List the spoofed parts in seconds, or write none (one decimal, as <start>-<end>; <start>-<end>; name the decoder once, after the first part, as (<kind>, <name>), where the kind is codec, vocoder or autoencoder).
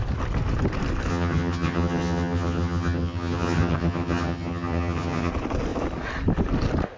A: 1.1-5.3 (vocoder, HiFi-GAN)